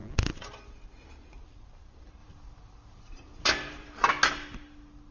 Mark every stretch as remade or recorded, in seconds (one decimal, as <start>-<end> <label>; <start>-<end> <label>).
0.0-2.2 recorded; 2.2-4.1 remade; 4.1-5.1 recorded